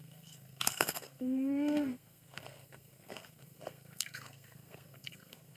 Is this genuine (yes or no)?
no